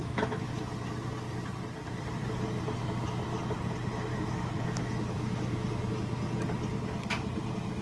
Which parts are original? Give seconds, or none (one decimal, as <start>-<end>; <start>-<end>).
0.5-4.1; 5.9-7.8